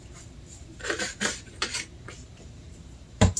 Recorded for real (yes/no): no